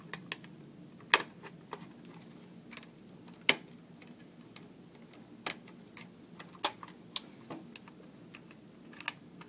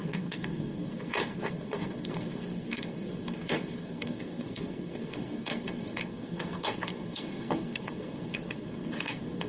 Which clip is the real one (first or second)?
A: first